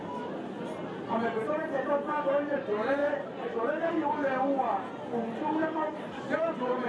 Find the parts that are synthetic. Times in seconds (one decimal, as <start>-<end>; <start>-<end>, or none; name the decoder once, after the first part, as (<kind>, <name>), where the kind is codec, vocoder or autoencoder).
none